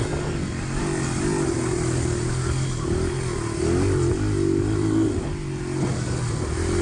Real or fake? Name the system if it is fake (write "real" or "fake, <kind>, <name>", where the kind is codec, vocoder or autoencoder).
real